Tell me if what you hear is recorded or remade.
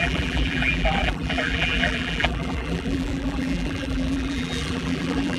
remade